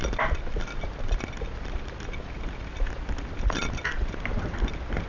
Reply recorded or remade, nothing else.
recorded